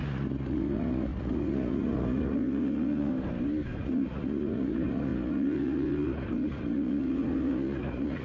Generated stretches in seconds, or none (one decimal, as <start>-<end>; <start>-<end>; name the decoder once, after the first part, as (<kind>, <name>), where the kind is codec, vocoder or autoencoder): 0.0-3.1 (vocoder, Vocos); 3.8-8.2